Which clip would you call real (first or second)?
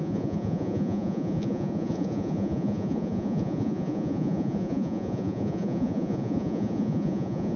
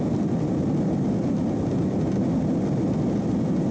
second